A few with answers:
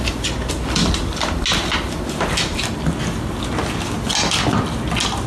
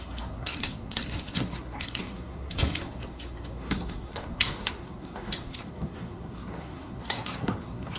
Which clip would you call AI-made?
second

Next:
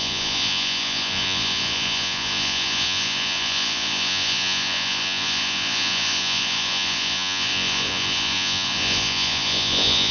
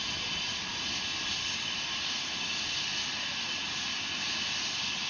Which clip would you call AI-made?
first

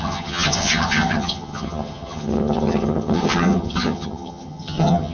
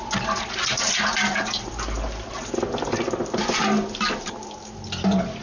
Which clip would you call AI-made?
first